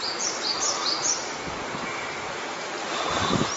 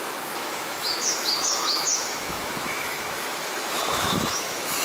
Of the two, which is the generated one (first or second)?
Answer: second